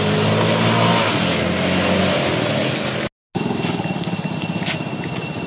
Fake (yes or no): no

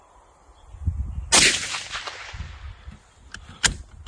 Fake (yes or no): no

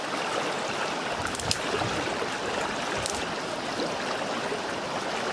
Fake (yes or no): no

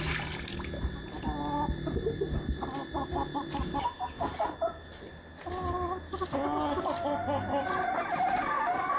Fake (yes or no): no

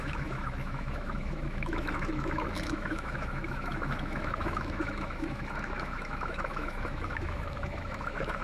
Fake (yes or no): yes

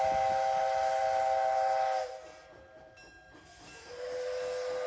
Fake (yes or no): no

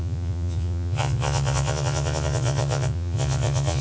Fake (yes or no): yes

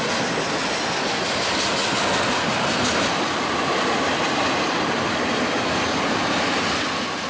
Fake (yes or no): no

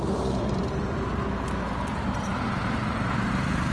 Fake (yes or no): no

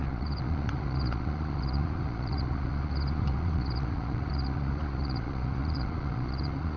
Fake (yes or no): yes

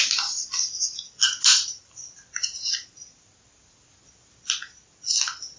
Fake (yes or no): no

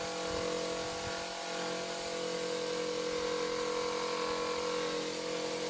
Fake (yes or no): no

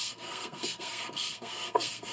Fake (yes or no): yes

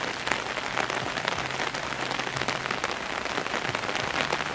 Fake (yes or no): no